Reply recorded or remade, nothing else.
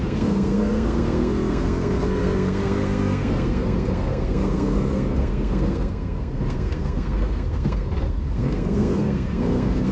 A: remade